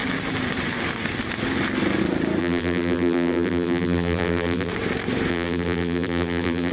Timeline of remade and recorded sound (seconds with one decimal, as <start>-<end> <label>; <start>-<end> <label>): 0.0-2.4 recorded; 2.4-4.7 remade; 4.7-5.3 recorded; 5.3-6.7 remade